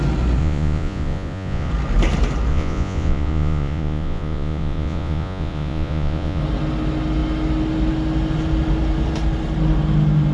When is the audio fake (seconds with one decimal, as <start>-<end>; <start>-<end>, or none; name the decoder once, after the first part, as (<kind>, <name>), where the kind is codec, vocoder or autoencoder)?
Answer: 0.4-1.7 (vocoder, Vocos); 2.5-6.4